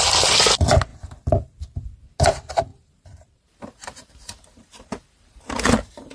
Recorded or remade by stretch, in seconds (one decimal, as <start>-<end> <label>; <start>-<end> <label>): 0.0-2.7 recorded; 2.7-6.1 remade